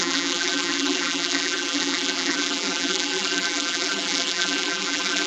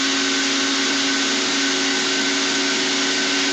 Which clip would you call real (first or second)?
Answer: second